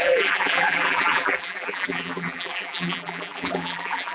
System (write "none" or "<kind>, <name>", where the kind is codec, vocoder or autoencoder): vocoder, BigVGAN v2